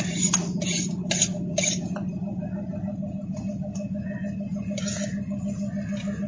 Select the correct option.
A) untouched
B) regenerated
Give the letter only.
A